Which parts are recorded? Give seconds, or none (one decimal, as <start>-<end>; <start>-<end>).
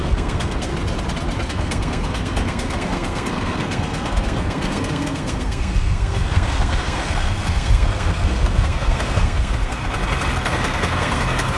0.7-1.5; 9.8-10.3